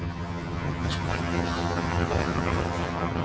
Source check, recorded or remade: remade